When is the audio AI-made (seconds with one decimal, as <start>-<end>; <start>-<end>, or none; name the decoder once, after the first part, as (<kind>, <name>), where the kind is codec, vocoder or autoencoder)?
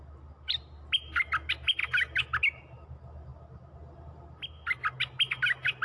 none